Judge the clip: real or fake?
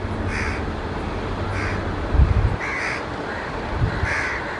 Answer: real